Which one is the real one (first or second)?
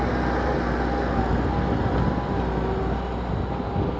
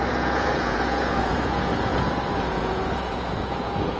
first